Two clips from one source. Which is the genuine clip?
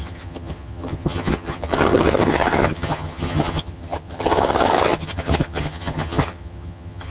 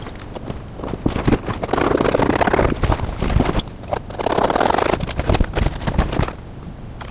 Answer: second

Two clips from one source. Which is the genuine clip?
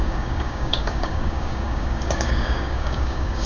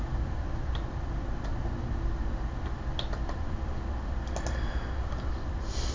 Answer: second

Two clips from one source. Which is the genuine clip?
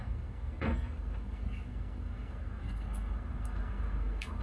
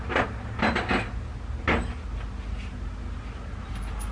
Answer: second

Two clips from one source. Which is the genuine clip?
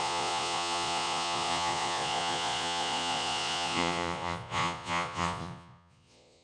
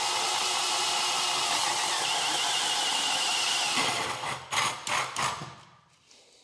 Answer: second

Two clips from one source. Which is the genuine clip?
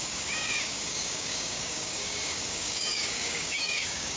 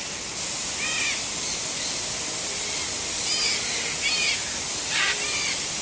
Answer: second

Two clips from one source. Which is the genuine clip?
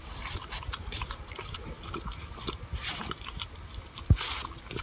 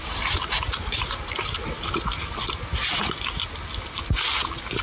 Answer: second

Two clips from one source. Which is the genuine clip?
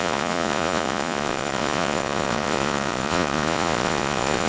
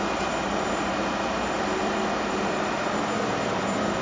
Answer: second